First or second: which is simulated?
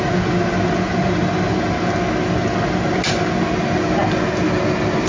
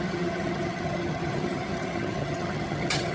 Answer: second